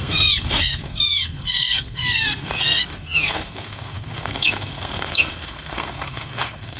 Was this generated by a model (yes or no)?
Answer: yes